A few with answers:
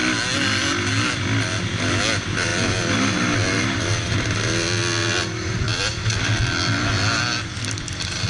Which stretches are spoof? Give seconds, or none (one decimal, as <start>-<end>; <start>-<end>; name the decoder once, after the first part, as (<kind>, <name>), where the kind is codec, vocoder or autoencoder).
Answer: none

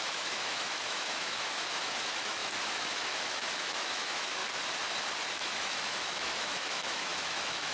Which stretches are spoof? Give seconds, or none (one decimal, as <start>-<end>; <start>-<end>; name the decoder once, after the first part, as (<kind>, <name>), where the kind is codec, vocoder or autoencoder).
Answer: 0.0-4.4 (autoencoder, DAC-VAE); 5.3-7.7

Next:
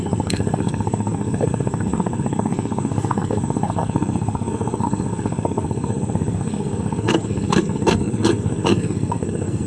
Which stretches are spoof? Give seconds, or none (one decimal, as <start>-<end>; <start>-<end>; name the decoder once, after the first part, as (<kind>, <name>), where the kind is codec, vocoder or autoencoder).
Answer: 0.0-9.7 (codec, SNAC)

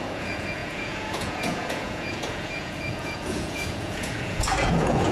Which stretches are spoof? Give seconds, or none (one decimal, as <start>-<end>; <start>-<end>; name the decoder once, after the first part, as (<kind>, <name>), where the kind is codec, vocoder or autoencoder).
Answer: 0.0-5.1 (vocoder, Vocos)

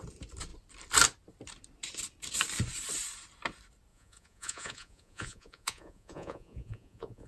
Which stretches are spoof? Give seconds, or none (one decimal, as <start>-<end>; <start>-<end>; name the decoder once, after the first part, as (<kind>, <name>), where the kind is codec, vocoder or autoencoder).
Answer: 3.9-7.3 (vocoder, Vocos)